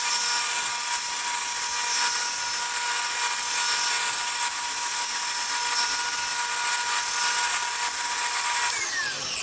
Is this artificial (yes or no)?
no